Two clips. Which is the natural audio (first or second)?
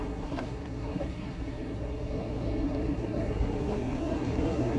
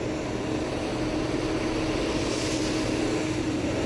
second